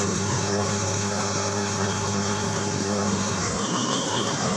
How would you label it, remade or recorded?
remade